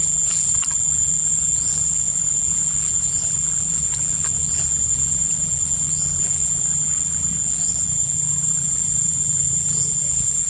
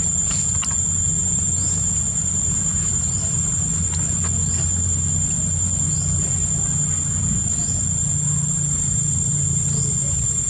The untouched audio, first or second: second